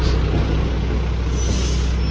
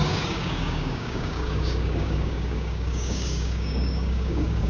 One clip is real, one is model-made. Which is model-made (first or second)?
second